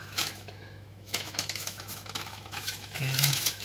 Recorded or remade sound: remade